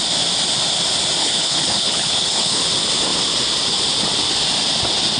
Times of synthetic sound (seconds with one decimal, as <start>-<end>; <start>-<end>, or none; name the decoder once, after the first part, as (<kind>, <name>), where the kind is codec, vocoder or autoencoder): 1.2-2.6 (codec, HILCodec)